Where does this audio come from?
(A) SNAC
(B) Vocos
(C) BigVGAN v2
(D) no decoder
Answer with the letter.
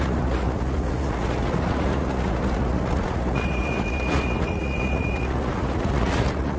B